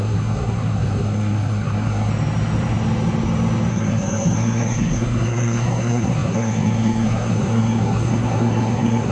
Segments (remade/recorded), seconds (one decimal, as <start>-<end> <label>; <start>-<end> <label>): 0.0-2.1 remade; 2.1-3.7 recorded; 3.7-9.1 remade

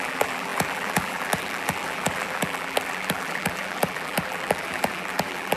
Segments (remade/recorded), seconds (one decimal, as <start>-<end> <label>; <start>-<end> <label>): 0.0-5.6 remade

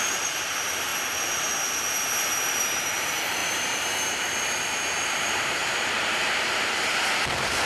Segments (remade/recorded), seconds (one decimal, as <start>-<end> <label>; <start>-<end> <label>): 0.0-0.9 remade; 0.9-2.5 recorded; 2.5-7.7 remade

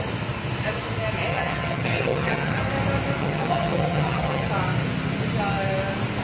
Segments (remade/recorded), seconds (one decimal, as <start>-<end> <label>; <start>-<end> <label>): 0.0-1.3 recorded; 1.3-2.6 remade; 2.6-3.2 recorded; 3.2-4.5 remade; 4.5-6.2 recorded

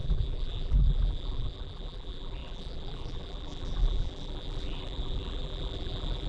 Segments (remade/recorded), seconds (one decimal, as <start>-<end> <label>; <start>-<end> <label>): 0.0-6.3 remade